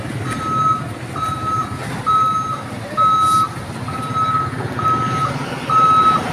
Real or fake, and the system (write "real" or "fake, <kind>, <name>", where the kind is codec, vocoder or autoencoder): real